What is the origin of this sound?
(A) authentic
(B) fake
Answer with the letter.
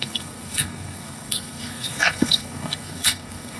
B